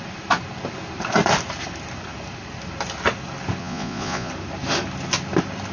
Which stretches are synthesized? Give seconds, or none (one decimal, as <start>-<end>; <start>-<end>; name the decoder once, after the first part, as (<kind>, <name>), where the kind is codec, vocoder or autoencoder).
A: 3.6-4.3 (vocoder, Vocos)